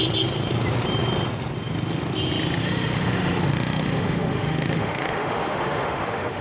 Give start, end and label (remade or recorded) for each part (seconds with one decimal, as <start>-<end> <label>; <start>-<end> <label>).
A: 0.0-2.6 recorded; 2.6-6.4 remade